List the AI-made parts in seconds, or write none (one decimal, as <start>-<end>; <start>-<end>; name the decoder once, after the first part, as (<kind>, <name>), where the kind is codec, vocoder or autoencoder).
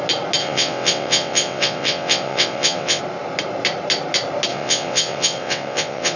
0.4-3.0 (vocoder, WaveNeXt); 4.5-6.2